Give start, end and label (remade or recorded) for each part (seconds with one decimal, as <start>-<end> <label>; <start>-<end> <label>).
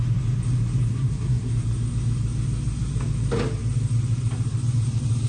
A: 0.0-0.9 recorded; 0.9-1.5 remade; 1.5-5.3 recorded